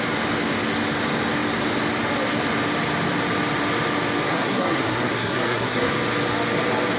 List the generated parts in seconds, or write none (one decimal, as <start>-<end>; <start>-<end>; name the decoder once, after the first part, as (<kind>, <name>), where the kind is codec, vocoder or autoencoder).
4.3-5.9 (codec, SNAC)

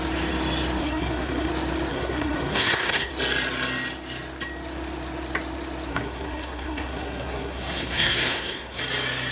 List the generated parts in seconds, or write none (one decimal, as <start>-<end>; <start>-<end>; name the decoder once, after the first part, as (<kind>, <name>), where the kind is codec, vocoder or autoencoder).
0.8-1.5 (codec, SNAC); 1.9-3.1; 5.9-8.8